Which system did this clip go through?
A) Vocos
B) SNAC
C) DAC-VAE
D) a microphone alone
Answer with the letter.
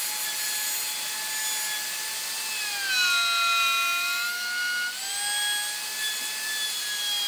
D